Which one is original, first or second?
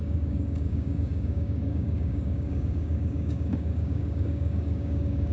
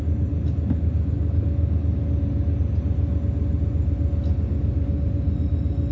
second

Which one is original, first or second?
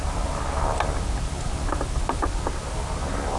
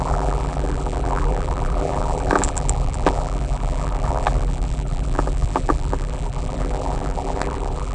first